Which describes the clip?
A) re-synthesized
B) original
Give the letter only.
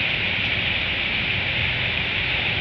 A